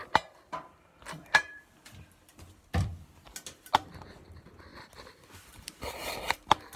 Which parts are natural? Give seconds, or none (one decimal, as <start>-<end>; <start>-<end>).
0.0-0.8; 2.9-4.1